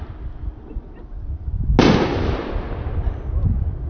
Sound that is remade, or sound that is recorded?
recorded